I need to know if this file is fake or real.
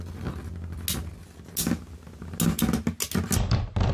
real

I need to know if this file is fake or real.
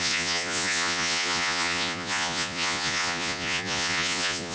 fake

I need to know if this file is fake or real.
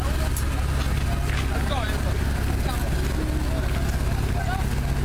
real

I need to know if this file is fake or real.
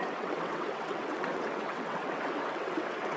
fake